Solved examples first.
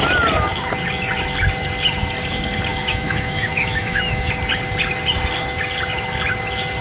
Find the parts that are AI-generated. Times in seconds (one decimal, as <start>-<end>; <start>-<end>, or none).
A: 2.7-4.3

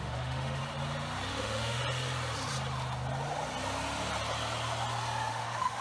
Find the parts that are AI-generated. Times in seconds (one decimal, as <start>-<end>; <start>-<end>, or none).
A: 0.0-0.6; 1.3-1.8; 5.3-5.8

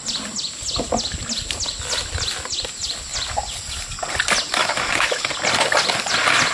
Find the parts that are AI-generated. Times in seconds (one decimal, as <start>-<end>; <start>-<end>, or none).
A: 4.6-5.3

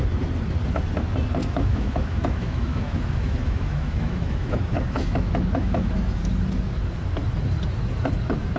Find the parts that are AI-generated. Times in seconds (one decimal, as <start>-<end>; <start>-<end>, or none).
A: 1.4-6.2